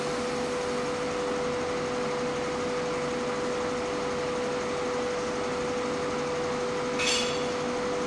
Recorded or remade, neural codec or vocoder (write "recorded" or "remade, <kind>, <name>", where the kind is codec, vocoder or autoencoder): recorded